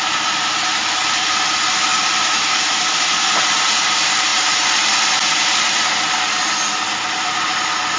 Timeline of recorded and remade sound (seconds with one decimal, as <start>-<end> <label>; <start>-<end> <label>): 0.0-1.9 recorded; 1.9-2.6 remade; 2.6-8.0 recorded